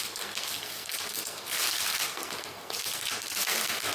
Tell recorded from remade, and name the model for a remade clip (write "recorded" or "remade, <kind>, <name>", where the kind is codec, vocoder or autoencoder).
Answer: remade, codec, SNAC